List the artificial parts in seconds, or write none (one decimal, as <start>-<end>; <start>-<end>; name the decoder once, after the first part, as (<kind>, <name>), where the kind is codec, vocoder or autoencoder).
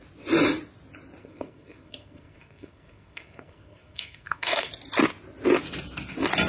1.2-4.7 (codec, SNAC)